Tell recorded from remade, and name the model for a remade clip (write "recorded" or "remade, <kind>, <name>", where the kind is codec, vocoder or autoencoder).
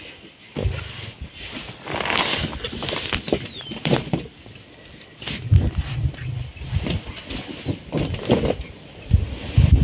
recorded